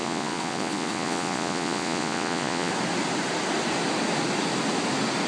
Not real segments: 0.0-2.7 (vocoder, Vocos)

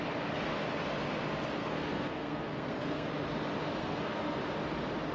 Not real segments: 1.6-3.1 (codec, SNAC); 3.8-4.4

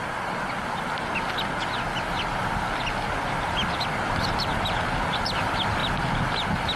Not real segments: none

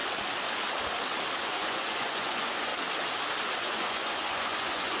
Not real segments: 1.4-2.7 (vocoder, Vocos); 3.6-5.0

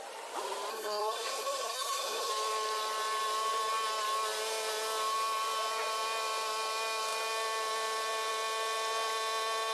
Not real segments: 0.7-2.3 (codec, SNAC)